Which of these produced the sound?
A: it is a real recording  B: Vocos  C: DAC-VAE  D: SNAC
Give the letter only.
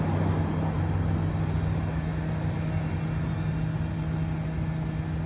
A